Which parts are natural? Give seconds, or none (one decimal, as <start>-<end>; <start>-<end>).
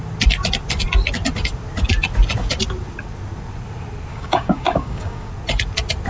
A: 0.0-4.1; 5.3-6.1